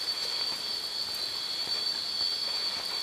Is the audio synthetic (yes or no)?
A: yes